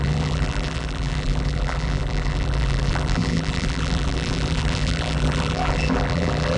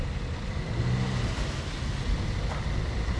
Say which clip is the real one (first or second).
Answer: second